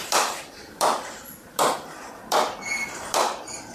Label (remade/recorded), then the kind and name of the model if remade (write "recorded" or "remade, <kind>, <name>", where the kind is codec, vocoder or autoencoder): recorded